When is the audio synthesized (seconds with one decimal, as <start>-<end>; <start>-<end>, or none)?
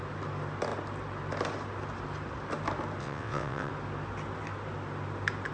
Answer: 3.0-3.7